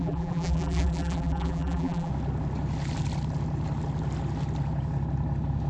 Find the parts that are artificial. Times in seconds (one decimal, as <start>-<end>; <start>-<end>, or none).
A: 0.0-2.1

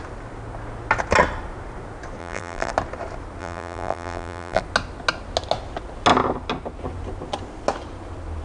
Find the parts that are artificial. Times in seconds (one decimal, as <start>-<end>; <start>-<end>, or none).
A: 2.2-2.7; 3.4-4.6

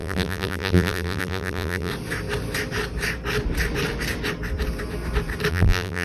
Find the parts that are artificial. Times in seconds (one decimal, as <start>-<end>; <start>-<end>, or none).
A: 0.0-1.9; 5.5-6.0

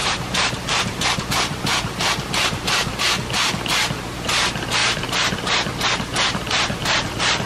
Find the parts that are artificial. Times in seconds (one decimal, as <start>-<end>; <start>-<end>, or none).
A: 0.0-3.0; 4.8-7.5

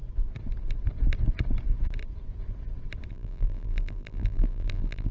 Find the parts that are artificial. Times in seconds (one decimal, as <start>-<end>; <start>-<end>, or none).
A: 3.1-5.1

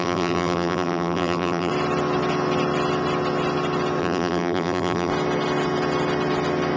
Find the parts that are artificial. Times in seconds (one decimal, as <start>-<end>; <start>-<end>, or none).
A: 0.0-1.7; 4.0-5.1

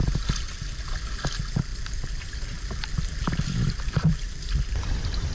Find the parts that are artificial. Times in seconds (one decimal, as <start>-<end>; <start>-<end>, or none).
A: 1.7-5.3